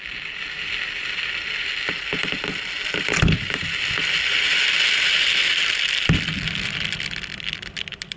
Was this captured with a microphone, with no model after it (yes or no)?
yes